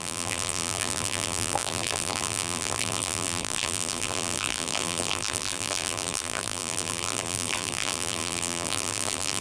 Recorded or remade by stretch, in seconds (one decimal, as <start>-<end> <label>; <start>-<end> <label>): 0.0-9.4 remade